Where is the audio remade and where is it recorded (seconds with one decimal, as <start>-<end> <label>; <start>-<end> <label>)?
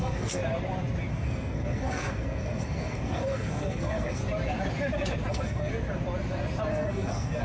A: 0.0-0.4 remade; 0.4-1.1 recorded; 1.1-4.2 remade; 4.2-5.3 recorded; 5.3-5.7 remade; 5.7-6.7 recorded; 6.7-7.4 remade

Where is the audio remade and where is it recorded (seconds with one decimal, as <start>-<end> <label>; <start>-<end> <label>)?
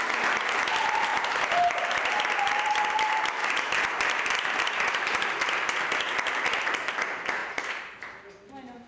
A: 0.0-1.1 recorded; 1.1-2.8 remade; 2.8-3.4 recorded; 3.4-5.8 remade; 5.8-7.4 recorded; 7.4-8.3 remade; 8.3-8.9 recorded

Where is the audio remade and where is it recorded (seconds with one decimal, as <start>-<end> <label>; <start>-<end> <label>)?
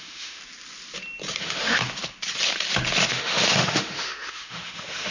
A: 0.0-0.4 remade; 0.4-1.4 recorded; 1.4-1.8 remade; 1.8-3.1 recorded; 3.1-5.1 remade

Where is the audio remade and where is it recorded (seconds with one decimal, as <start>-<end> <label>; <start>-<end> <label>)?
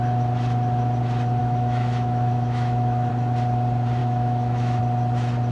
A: 0.0-1.4 recorded; 1.4-3.1 remade; 3.1-4.0 recorded; 4.0-4.8 remade; 4.8-5.5 recorded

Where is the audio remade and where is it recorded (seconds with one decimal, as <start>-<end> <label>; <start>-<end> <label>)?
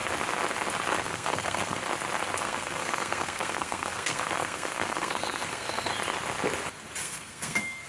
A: 0.0-1.0 recorded; 1.0-1.8 remade; 1.8-2.4 recorded; 2.4-5.9 remade; 5.9-7.0 recorded; 7.0-7.9 remade